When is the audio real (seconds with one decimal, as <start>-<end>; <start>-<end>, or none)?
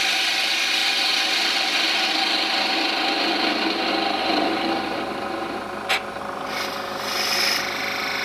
0.0-8.2